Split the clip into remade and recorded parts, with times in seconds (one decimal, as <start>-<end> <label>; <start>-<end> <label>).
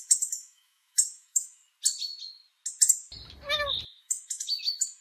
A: 0.0-1.6 remade; 1.6-4.0 recorded; 4.0-5.0 remade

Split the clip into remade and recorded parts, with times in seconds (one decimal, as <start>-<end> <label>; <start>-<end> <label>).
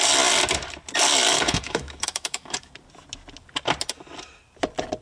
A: 0.0-1.3 recorded; 1.3-2.7 remade; 2.7-5.0 recorded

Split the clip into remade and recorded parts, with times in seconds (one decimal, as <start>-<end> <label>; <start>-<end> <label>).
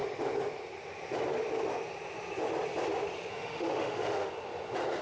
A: 0.0-3.3 recorded; 3.3-4.3 remade; 4.3-5.0 recorded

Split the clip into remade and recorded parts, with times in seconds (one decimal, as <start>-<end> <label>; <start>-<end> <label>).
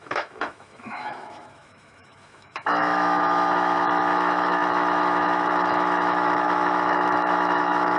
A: 0.0-8.0 remade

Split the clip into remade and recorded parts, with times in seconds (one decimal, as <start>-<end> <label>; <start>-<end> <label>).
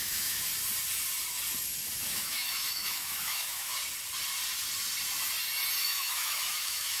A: 0.0-0.5 remade; 0.5-2.0 recorded; 2.0-3.7 remade; 3.7-5.8 recorded; 5.8-7.0 remade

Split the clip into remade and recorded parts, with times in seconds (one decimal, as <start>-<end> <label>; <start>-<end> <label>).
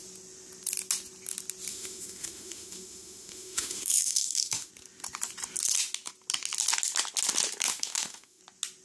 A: 0.0-1.7 recorded; 1.7-4.7 remade; 4.7-7.7 recorded; 7.7-8.4 remade; 8.4-8.8 recorded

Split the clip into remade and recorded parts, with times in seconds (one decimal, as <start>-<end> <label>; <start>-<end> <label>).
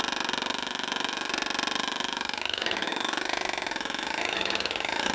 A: 0.0-0.5 recorded; 0.5-1.3 remade; 1.3-1.8 recorded; 1.8-5.1 remade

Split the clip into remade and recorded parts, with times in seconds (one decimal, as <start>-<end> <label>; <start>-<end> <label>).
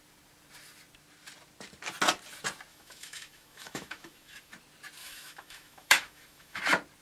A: 0.0-2.7 recorded; 2.7-4.5 remade; 4.5-5.0 recorded; 5.0-6.6 remade; 6.6-7.0 recorded